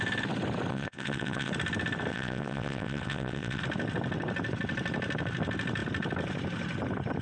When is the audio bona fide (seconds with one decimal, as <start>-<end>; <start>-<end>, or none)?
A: 0.0-0.7; 1.5-2.1; 3.6-7.2